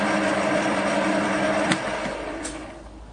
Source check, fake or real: fake